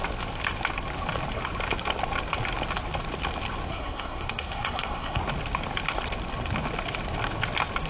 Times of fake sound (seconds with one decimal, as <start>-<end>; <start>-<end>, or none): 3.7-5.2